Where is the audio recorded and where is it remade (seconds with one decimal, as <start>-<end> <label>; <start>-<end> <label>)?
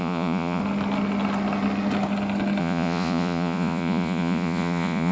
0.0-0.6 remade; 0.6-2.6 recorded; 2.6-5.1 remade